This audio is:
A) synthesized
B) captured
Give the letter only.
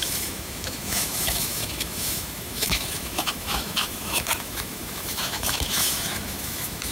A